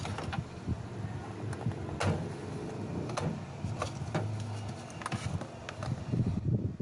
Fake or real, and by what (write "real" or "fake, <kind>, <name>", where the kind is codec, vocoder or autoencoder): real